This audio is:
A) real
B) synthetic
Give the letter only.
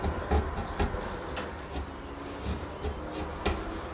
A